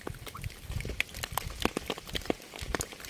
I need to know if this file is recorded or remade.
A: recorded